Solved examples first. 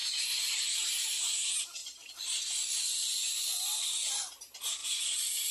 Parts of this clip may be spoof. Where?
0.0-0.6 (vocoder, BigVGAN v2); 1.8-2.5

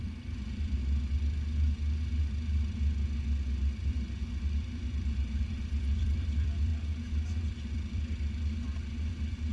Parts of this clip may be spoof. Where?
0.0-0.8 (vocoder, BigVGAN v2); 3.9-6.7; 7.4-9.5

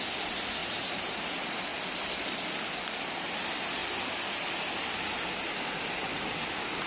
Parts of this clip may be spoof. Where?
0.6-1.2 (vocoder, BigVGAN v2)